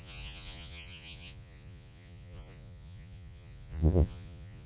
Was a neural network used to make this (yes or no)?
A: yes